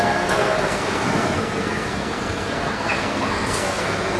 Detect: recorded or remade remade